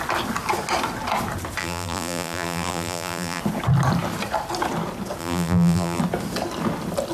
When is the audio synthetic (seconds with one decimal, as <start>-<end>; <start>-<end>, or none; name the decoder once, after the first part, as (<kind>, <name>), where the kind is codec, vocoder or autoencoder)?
1.6-3.4 (vocoder, BigVGAN v2); 5.2-6.0